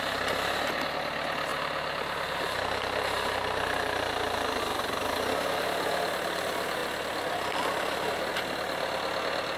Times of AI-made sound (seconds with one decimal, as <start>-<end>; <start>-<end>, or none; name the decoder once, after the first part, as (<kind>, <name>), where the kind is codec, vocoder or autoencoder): 1.5-4.6 (vocoder, BigVGAN v2)